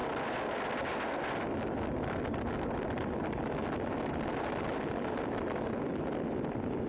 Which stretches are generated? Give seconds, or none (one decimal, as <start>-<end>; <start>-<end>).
none